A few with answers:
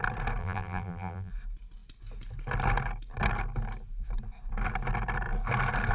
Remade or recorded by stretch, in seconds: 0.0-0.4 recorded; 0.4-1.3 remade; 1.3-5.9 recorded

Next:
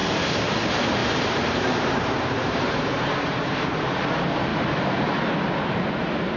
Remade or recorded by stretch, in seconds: 0.0-0.6 remade; 0.6-1.0 recorded; 1.0-4.0 remade; 4.0-4.5 recorded; 4.5-5.2 remade; 5.2-6.4 recorded

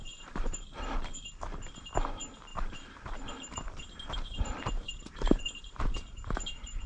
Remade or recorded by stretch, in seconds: 0.0-2.5 recorded; 2.5-6.9 remade

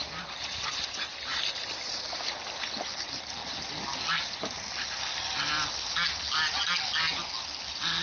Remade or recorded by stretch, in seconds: 0.0-8.0 recorded